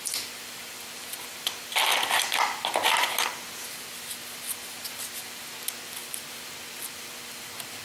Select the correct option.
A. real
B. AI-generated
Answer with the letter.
A